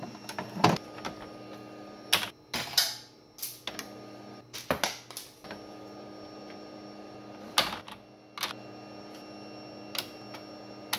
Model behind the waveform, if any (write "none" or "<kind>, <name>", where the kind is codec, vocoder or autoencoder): none